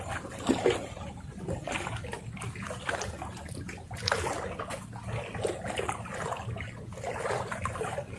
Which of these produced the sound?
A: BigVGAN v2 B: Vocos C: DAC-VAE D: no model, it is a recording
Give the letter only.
D